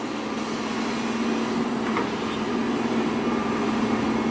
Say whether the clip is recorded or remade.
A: recorded